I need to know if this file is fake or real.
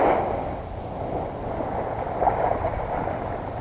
real